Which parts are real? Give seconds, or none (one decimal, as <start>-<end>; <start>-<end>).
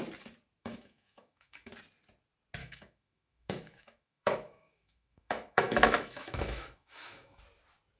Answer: 0.0-0.6; 1.7-2.6; 7.4-8.0